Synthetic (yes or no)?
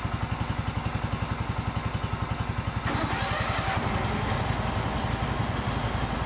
no